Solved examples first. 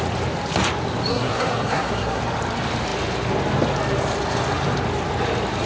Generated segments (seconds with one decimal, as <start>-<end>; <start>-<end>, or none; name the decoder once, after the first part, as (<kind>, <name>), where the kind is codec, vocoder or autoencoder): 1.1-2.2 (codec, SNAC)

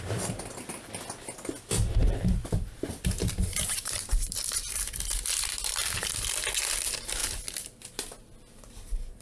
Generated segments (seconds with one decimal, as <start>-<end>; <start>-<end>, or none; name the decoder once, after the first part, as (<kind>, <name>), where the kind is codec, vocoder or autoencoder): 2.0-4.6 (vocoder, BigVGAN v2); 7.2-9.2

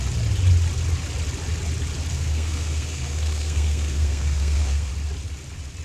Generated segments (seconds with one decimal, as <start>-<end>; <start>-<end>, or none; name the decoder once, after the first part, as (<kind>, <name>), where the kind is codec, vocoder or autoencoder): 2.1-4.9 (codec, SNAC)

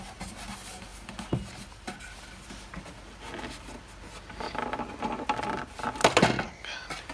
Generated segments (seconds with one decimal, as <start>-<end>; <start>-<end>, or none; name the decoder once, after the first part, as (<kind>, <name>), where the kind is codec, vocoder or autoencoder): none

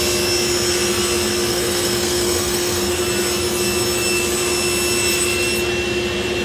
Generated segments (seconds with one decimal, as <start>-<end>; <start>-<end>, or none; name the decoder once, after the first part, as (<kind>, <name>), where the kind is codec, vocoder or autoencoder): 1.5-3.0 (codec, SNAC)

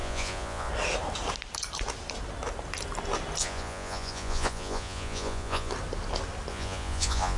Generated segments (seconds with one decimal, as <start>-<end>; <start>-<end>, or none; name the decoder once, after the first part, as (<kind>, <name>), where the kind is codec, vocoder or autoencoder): 0.0-0.7 (vocoder, Vocos); 3.4-5.7; 6.5-7.4